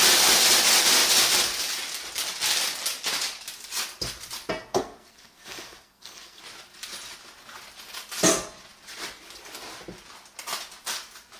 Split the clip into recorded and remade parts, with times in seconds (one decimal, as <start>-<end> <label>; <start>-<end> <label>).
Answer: 0.0-4.7 recorded; 4.7-6.4 remade; 6.4-11.4 recorded